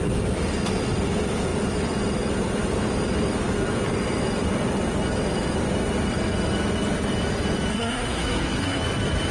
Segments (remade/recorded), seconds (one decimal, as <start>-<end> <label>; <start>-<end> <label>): 0.0-7.7 recorded; 7.7-8.8 remade; 8.8-9.3 recorded